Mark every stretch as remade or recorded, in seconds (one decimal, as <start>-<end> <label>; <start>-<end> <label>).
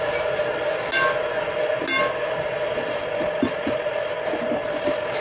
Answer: 0.0-5.2 recorded